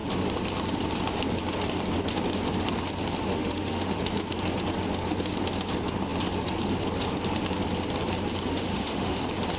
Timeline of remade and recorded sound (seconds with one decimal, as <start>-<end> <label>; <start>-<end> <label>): 0.0-3.3 recorded; 3.3-4.0 remade; 4.0-8.5 recorded; 8.5-9.2 remade; 9.2-9.6 recorded